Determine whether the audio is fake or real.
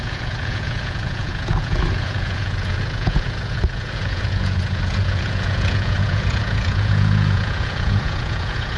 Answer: fake